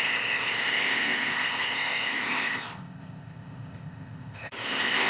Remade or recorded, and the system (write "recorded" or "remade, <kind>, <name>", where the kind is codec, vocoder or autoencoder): remade, codec, ZipCodec